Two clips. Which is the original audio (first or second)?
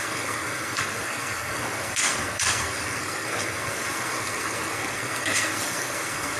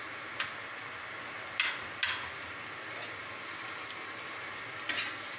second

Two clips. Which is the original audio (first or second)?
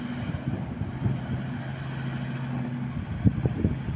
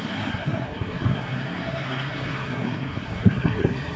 first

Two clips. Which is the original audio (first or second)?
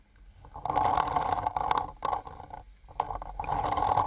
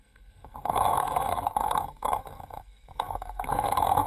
first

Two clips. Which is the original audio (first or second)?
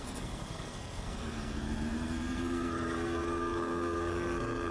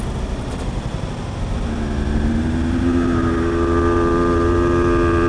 second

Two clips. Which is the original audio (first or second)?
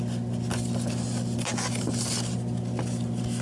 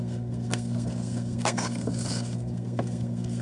first